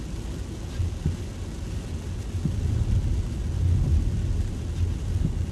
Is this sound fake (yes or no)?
no